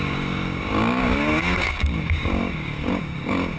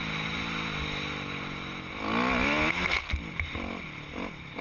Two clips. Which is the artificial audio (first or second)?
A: first